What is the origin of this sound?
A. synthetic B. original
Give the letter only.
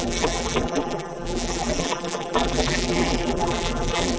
A